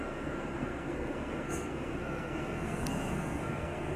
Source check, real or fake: fake